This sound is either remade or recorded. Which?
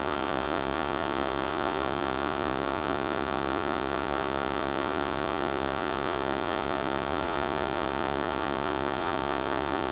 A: remade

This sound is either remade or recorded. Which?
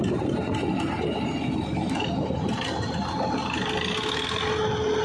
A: recorded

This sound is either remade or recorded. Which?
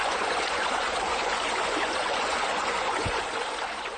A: remade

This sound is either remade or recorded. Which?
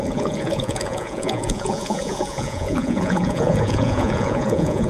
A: remade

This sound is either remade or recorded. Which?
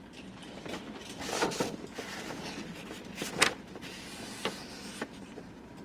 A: recorded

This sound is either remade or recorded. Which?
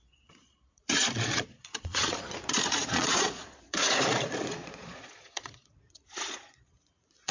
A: remade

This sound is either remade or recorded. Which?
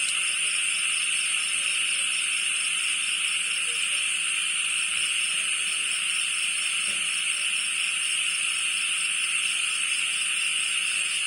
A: recorded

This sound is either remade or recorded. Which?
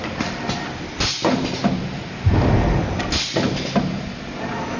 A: recorded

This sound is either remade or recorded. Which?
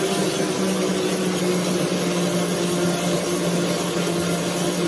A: recorded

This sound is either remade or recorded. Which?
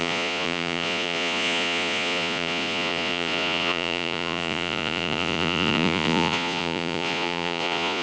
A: remade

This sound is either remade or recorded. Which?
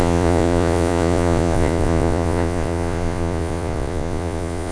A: remade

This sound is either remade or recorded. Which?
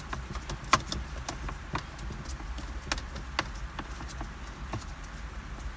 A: recorded